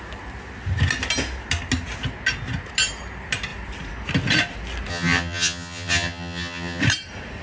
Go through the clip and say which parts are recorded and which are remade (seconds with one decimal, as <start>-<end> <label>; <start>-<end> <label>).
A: 0.0-4.9 recorded; 4.9-6.8 remade; 6.8-7.4 recorded